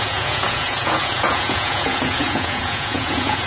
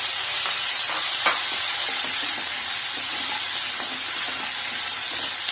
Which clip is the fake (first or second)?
first